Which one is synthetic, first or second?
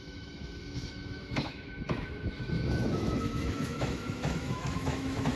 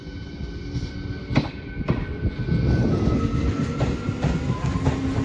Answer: first